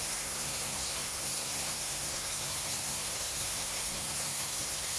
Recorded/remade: remade